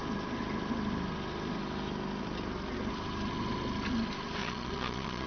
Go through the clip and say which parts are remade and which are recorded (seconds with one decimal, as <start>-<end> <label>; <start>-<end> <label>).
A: 0.0-4.4 recorded; 4.4-5.3 remade